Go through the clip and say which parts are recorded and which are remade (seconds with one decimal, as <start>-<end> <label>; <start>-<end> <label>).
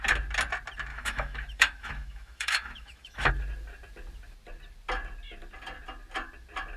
0.0-0.9 recorded; 0.9-3.3 remade; 3.3-6.8 recorded